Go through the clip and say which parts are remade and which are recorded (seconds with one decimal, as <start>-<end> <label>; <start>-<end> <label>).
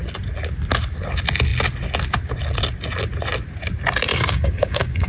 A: 0.0-4.1 recorded; 4.1-5.1 remade